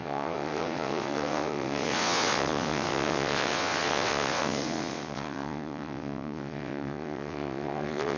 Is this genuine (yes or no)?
no